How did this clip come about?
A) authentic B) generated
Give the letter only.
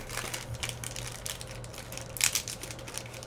A